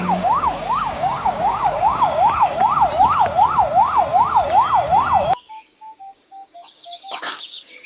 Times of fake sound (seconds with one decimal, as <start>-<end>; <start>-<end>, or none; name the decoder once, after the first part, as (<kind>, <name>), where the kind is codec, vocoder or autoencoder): 0.0-2.6 (codec, DAC); 5.2-7.9